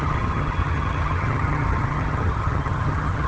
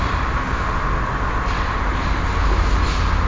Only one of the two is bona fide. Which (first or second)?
second